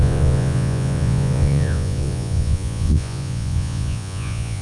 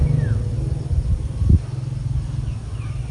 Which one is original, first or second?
second